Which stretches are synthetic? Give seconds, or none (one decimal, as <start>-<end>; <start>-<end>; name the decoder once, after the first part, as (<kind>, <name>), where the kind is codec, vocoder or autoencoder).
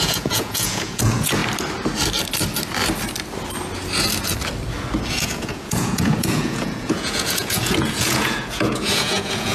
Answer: 0.0-1.4 (vocoder, Vocos); 5.1-9.5